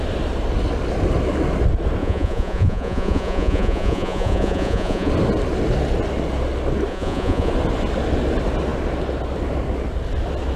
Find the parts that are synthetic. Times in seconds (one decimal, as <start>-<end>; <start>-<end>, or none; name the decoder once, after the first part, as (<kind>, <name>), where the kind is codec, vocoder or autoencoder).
2.0-5.1 (vocoder, Vocos); 6.9-7.5